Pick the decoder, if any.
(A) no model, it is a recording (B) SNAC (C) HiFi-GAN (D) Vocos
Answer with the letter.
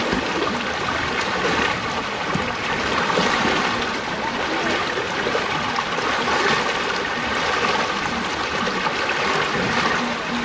A